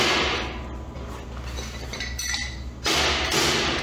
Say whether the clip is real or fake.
real